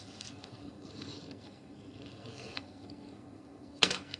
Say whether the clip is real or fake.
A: fake